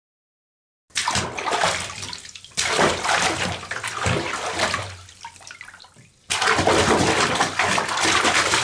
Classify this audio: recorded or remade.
recorded